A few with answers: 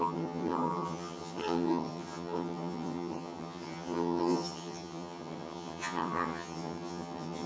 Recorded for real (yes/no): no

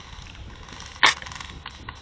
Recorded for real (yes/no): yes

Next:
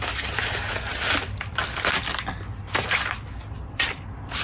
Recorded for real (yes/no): no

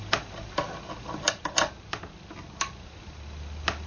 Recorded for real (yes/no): yes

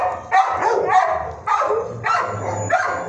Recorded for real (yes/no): yes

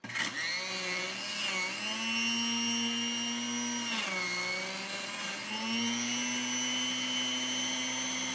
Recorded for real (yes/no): yes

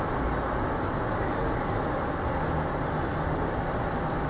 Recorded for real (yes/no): yes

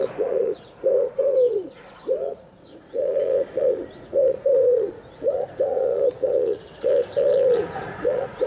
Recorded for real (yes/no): no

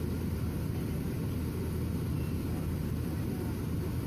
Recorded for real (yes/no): no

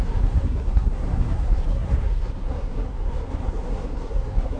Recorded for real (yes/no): no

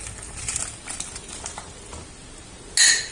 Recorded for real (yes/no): yes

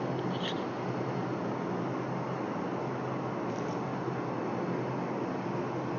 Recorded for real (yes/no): yes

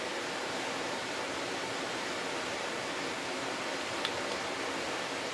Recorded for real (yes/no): yes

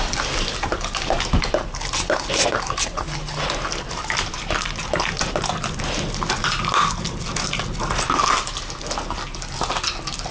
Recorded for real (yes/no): yes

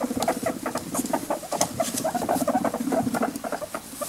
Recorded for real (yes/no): no